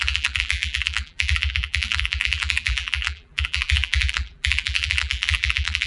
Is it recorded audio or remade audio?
remade